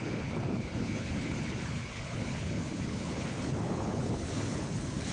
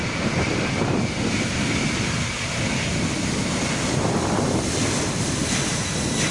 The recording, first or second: second